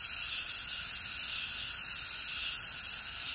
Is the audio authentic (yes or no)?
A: yes